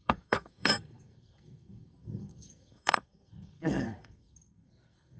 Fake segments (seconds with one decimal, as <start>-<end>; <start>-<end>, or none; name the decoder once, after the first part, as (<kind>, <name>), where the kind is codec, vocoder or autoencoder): 0.0-5.2 (codec, SNAC)